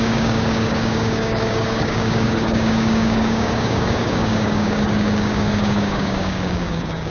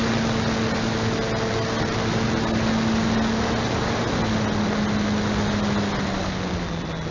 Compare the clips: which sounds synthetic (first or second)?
first